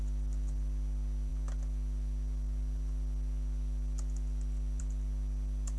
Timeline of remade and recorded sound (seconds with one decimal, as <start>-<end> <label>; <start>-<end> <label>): 0.0-5.8 recorded